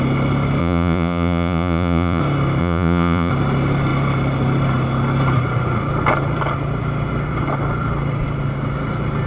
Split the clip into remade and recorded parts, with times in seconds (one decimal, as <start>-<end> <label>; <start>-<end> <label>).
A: 0.0-0.6 recorded; 0.6-2.2 remade; 2.2-2.6 recorded; 2.6-3.3 remade; 3.3-9.3 recorded